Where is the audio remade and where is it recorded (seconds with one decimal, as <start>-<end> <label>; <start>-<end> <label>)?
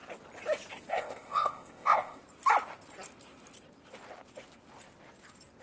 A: 0.0-0.9 recorded; 0.9-2.2 remade; 2.2-5.6 recorded